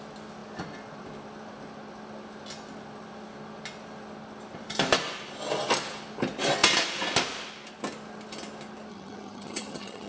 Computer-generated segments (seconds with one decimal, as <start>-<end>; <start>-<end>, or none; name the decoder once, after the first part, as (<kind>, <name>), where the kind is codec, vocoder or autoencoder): 8.9-10.1 (vocoder, HiFi-GAN)